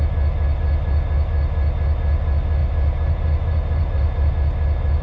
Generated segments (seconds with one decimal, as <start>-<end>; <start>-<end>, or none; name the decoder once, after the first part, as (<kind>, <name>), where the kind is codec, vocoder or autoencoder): 2.6-4.3 (vocoder, BigVGAN v2)